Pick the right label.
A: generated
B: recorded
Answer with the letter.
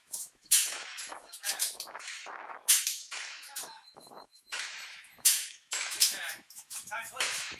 A